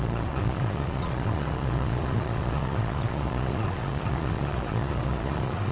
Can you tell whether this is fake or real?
fake